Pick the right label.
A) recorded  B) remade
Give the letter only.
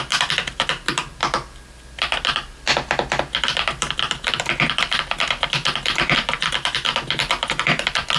B